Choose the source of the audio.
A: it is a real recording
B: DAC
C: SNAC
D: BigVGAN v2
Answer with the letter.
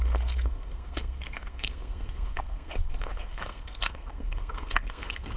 C